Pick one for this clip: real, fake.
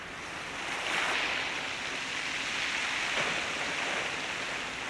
real